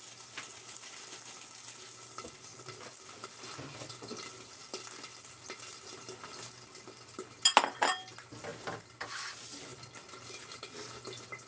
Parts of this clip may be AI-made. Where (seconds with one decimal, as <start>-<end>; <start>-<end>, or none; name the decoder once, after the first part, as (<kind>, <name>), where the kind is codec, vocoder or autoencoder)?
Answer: 8.5-9.2 (vocoder, BigVGAN v2)